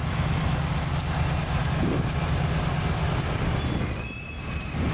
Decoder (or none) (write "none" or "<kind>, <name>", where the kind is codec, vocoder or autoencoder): none